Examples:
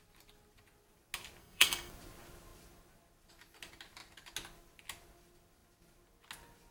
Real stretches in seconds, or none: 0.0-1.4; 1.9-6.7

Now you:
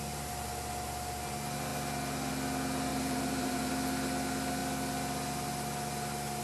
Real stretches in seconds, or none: 0.0-2.9; 3.7-6.4

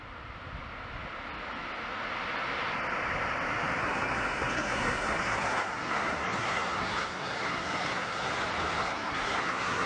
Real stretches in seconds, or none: 0.0-3.8; 8.3-8.8

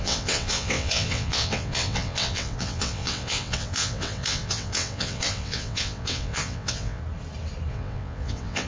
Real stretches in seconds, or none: 7.0-7.7

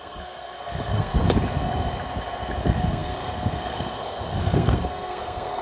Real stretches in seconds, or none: 1.1-2.6

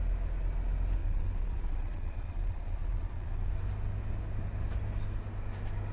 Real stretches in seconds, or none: 0.0-1.0; 3.5-5.9

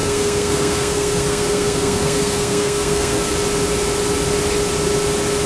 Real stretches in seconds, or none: 3.3-5.5